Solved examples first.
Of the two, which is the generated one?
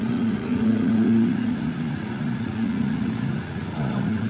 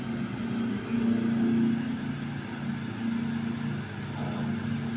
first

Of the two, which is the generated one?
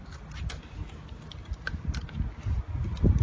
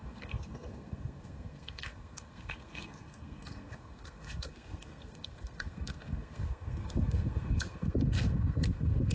second